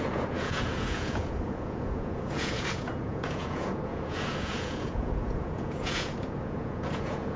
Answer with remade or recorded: remade